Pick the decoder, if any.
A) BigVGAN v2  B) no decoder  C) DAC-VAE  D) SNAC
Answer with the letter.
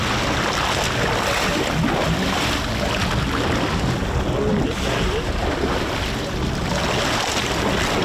B